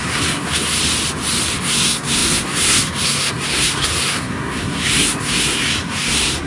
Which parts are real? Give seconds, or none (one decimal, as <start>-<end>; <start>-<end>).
0.8-1.6